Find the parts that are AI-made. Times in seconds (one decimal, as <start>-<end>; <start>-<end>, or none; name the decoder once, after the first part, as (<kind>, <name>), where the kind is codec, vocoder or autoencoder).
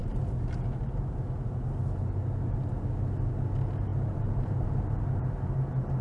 3.9-5.4 (vocoder, BigVGAN v2)